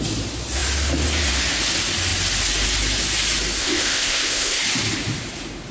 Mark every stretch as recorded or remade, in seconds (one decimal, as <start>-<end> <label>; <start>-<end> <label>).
0.0-3.6 recorded; 3.6-4.6 remade; 4.6-5.7 recorded